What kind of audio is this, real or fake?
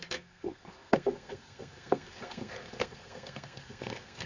fake